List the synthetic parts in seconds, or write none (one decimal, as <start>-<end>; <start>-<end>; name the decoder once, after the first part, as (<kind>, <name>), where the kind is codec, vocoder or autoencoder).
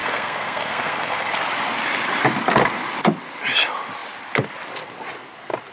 0.0-1.3 (codec, SNAC)